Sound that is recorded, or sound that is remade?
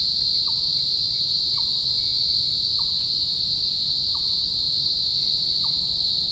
recorded